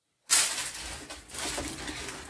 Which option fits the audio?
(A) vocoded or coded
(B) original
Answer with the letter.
B